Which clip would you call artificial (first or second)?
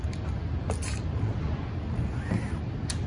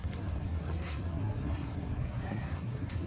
second